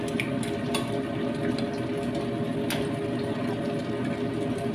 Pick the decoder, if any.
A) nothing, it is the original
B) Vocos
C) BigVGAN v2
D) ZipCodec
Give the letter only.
A